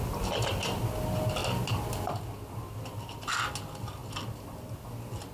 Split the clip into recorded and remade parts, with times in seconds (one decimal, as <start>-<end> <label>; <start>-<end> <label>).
0.0-5.3 recorded